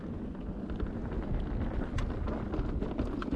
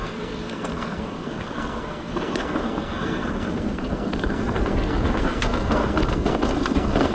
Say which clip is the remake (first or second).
second